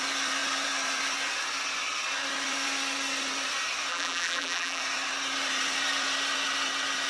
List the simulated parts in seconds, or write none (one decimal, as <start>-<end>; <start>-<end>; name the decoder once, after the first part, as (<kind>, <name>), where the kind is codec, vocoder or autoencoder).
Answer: 3.9-4.8 (vocoder, BigVGAN v2)